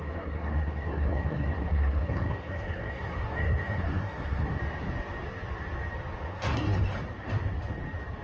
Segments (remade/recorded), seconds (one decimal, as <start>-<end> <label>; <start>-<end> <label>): 0.0-4.6 remade; 4.6-6.3 recorded; 6.3-6.8 remade; 6.8-8.2 recorded